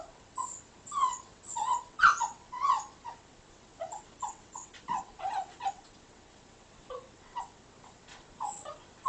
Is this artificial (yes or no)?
yes